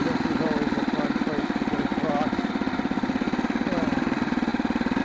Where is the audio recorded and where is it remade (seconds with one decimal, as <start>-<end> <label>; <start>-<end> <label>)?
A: 0.0-5.0 recorded